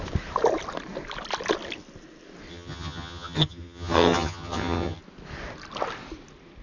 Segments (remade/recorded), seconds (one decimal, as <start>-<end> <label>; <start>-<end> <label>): 0.0-2.5 recorded; 2.5-5.0 remade; 5.0-6.6 recorded